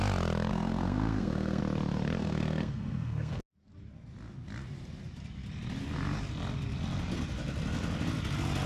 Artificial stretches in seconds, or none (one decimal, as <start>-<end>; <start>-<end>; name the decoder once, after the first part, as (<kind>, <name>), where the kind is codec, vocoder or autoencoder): 0.5-1.6 (codec, SNAC); 2.2-3.4